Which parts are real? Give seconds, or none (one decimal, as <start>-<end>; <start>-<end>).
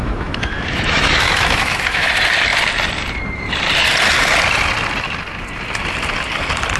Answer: 2.1-6.8